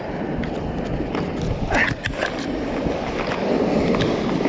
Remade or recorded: recorded